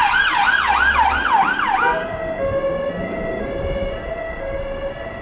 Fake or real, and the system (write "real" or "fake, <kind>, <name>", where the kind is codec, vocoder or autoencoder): real